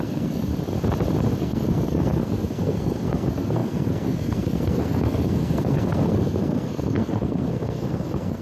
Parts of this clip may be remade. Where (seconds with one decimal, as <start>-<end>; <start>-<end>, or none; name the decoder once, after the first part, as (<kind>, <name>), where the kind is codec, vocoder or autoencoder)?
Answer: 0.0-0.5 (codec, SNAC); 1.4-8.4